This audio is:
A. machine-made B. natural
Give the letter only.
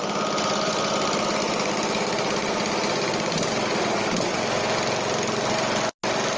B